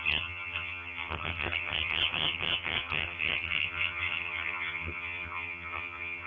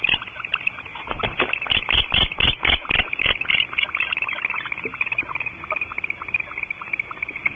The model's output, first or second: first